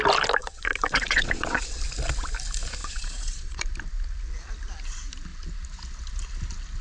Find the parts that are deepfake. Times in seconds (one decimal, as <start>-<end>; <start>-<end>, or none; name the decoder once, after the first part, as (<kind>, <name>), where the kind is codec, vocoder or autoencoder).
0.4-1.8 (vocoder, Vocos); 2.8-3.7